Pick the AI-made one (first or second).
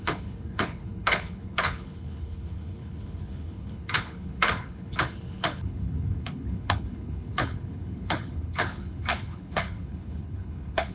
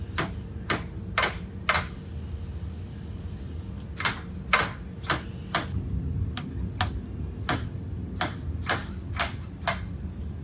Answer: first